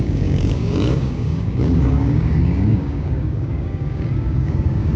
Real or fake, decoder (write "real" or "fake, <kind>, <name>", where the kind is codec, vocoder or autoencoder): fake, codec, DAC